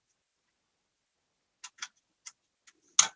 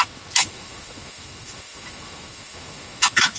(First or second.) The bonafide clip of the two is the first